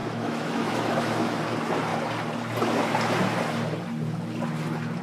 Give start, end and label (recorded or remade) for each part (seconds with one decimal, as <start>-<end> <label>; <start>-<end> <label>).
0.0-1.4 remade; 1.4-5.0 recorded